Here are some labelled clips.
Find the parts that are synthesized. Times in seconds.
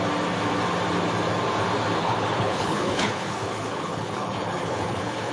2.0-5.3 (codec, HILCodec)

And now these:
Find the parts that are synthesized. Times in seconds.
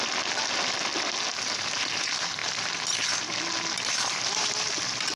none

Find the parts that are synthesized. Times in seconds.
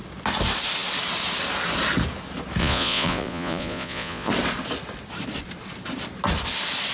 2.6-4.3 (vocoder, Vocos)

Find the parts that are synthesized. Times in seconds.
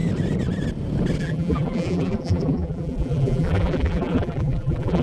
1.2-5.0 (vocoder, BigVGAN v2)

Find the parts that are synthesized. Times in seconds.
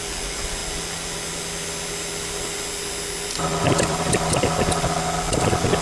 3.5-4.3 (vocoder, BigVGAN v2)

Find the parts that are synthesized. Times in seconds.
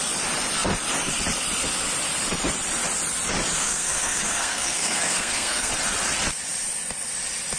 3.6-5.7 (codec, SNAC)